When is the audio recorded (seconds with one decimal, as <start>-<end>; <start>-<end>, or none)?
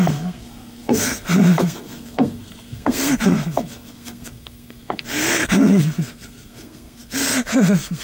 none